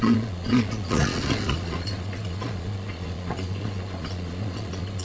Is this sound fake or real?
fake